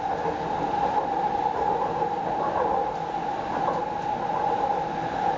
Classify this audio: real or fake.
real